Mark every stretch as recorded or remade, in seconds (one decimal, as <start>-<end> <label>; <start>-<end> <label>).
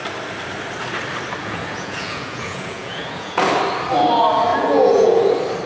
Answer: 0.0-1.4 recorded; 1.4-3.4 remade; 3.4-4.5 recorded; 4.5-5.2 remade; 5.2-5.7 recorded